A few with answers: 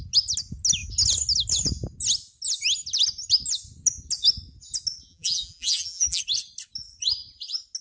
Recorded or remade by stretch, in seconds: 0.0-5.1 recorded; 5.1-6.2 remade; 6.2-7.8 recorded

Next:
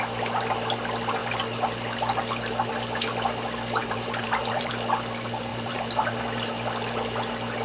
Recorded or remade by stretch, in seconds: 0.0-3.8 recorded; 3.8-4.7 remade; 4.7-5.5 recorded; 5.5-6.2 remade; 6.2-7.6 recorded

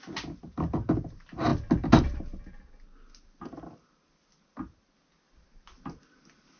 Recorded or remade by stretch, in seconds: 0.0-6.6 recorded